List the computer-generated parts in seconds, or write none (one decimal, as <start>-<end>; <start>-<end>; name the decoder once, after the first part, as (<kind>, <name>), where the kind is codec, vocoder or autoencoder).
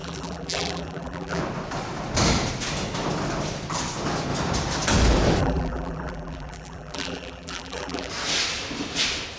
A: 0.0-1.4 (vocoder, BigVGAN v2); 5.4-8.1